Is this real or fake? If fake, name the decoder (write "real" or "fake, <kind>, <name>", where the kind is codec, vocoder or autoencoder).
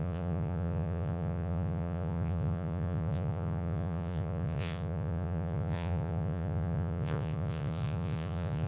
fake, vocoder, Vocos